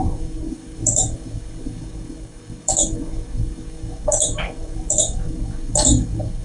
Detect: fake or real fake